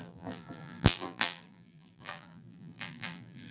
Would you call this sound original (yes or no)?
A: no